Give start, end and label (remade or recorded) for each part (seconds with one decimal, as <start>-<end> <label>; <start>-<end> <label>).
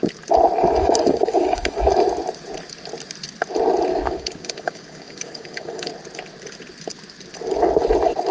0.0-0.8 recorded; 0.8-1.9 remade; 1.9-3.9 recorded; 3.9-5.9 remade; 5.9-8.3 recorded